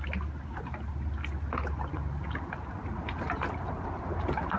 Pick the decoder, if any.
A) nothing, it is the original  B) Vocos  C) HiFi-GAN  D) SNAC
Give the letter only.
A